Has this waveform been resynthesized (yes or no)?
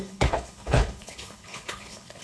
yes